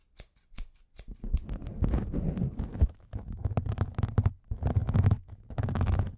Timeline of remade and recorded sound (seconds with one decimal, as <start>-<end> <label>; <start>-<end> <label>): 0.0-2.7 recorded; 2.7-3.4 remade; 3.4-4.8 recorded; 4.8-5.8 remade; 5.8-6.2 recorded